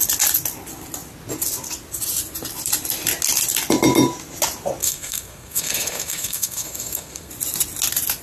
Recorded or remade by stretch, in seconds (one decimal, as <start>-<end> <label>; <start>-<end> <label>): 0.0-4.8 recorded; 4.8-7.3 remade; 7.3-8.2 recorded